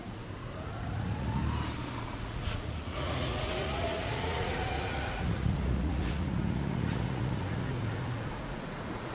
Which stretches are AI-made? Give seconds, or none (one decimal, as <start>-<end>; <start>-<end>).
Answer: 0.0-1.4; 2.0-9.1